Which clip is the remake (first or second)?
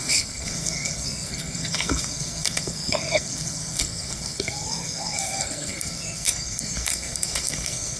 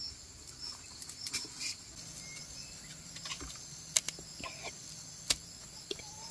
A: first